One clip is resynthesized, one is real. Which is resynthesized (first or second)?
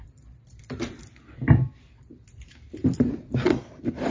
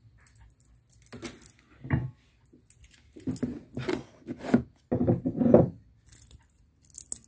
first